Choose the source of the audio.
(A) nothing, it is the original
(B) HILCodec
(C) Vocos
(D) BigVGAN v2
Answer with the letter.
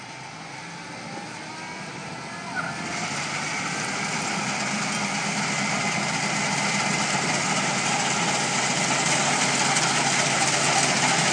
A